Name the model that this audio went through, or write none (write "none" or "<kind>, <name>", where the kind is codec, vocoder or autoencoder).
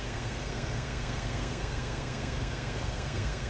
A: codec, SNAC